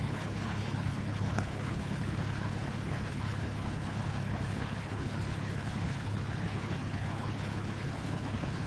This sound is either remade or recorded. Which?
remade